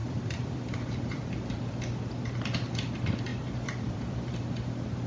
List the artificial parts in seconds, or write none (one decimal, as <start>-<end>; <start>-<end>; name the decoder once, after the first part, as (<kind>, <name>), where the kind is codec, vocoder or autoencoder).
0.0-1.2 (vocoder, BigVGAN v2); 3.3-4.3